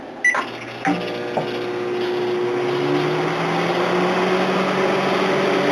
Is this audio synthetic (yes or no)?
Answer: no